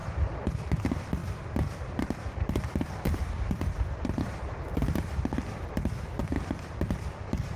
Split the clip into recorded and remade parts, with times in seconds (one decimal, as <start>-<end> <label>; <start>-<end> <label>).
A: 0.0-0.6 remade; 0.6-1.2 recorded; 1.2-5.3 remade; 5.3-6.2 recorded; 6.2-7.6 remade